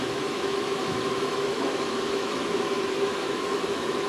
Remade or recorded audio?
remade